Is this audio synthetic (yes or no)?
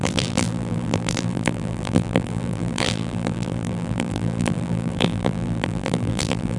yes